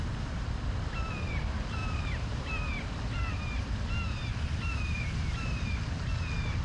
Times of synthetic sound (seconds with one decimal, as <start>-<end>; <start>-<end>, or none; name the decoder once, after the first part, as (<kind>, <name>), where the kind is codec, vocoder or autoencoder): 1.8-2.5 (vocoder, BigVGAN v2); 3.3-3.8; 4.3-5.6